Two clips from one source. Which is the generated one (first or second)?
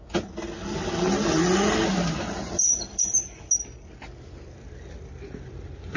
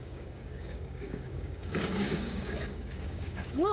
second